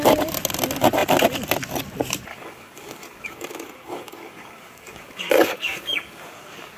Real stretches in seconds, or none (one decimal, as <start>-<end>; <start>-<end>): 0.0-2.3